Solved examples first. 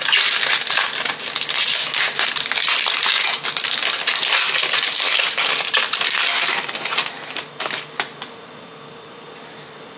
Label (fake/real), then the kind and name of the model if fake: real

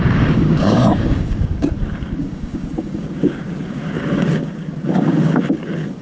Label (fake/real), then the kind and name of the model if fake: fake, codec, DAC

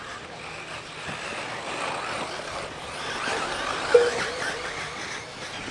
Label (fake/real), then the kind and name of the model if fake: real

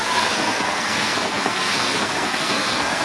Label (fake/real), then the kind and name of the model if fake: fake, codec, SNAC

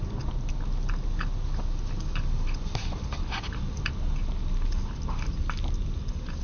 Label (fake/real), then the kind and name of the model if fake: real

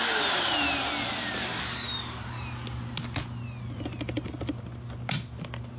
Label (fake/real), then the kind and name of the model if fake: real